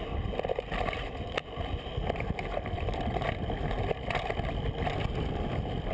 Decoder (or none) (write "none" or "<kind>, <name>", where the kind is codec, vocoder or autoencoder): none